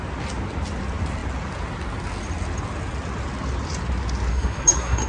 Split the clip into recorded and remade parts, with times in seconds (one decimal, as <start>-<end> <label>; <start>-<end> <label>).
0.0-4.3 recorded; 4.3-5.1 remade